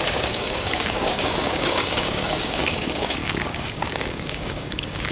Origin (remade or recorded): remade